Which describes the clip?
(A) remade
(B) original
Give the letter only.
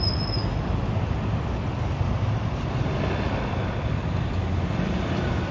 B